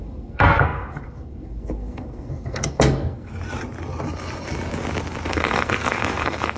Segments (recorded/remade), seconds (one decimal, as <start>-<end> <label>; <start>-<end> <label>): 0.0-3.3 remade; 3.3-5.3 recorded; 5.3-6.6 remade